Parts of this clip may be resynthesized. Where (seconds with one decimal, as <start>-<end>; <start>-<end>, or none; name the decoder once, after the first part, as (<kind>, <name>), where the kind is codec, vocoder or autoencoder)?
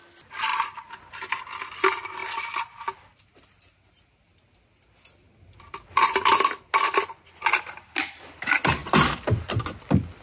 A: none